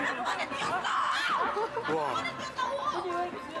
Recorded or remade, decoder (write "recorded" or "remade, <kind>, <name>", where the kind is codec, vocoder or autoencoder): recorded